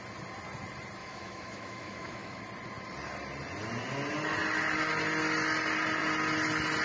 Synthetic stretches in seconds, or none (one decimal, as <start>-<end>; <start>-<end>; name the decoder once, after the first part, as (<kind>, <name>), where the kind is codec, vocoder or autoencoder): 1.0-2.4 (autoencoder, DAC-VAE)